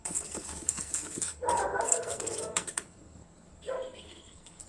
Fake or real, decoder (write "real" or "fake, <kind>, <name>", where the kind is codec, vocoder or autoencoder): fake, codec, SNAC